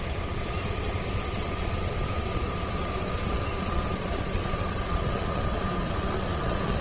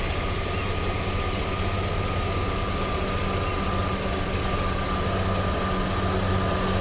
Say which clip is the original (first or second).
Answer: second